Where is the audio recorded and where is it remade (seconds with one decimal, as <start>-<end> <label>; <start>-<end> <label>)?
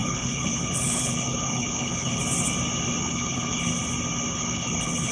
0.0-2.2 remade; 2.2-3.0 recorded; 3.0-3.7 remade; 3.7-4.3 recorded; 4.3-5.1 remade